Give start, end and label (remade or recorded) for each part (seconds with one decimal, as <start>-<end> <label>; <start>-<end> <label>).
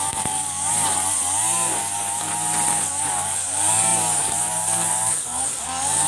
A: 0.0-0.7 remade; 0.7-1.8 recorded; 1.8-2.3 remade; 2.3-2.9 recorded; 2.9-6.1 remade